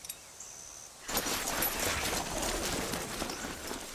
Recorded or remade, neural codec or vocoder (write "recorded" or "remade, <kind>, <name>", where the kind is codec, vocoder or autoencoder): recorded